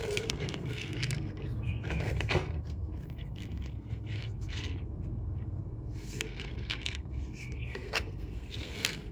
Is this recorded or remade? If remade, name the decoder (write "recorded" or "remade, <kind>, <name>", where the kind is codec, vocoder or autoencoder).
remade, codec, SNAC